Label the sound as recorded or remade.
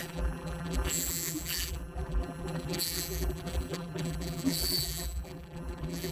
remade